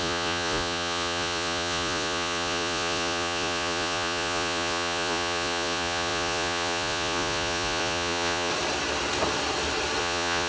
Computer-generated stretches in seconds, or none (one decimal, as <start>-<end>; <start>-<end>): 0.0-8.5; 10.0-10.5